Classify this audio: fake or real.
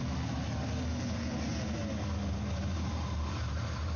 real